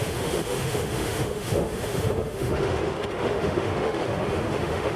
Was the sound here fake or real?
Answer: fake